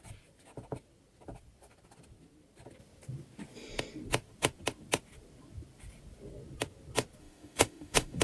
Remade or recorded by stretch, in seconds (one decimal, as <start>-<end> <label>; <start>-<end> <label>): 0.0-7.2 recorded; 7.2-8.2 remade